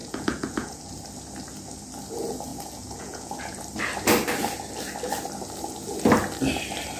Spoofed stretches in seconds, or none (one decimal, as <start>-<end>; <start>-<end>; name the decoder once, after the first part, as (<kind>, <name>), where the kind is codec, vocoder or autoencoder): 0.0-0.9 (vocoder, Vocos); 2.5-3.6